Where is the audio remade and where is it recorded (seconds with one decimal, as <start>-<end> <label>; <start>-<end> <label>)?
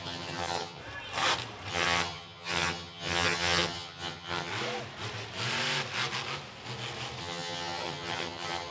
0.0-0.8 remade; 0.8-1.7 recorded; 1.7-4.5 remade; 4.5-7.2 recorded; 7.2-8.7 remade